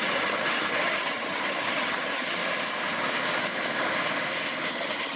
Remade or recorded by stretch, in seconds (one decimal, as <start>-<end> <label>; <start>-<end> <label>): 0.0-2.4 remade; 2.4-4.7 recorded; 4.7-5.2 remade